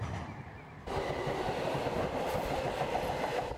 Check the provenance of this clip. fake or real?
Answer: real